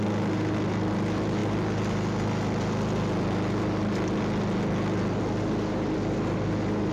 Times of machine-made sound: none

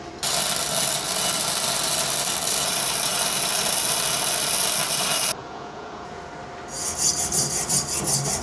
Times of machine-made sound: 5.4-6.2

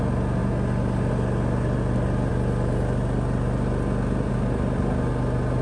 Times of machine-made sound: none